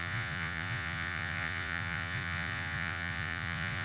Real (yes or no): no